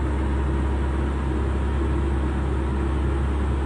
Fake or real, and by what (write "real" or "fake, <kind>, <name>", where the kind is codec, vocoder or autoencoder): real